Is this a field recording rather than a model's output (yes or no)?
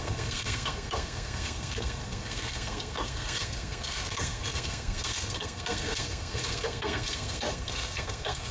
no